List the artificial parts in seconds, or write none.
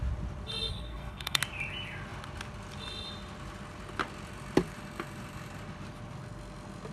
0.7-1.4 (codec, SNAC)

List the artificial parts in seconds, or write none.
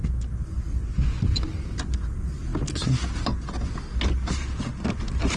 none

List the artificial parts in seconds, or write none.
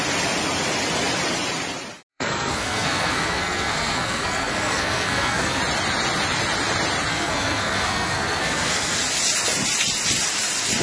2.1-5.6 (codec, SNAC); 7.1-9.0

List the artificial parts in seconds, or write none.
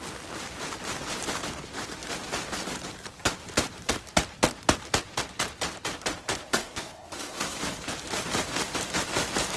6.5-7.6 (codec, SNAC)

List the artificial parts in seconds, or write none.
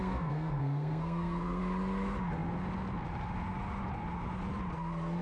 0.0-1.6 (codec, SNAC)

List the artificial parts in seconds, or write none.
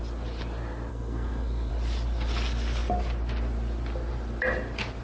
0.9-1.7 (codec, SNAC)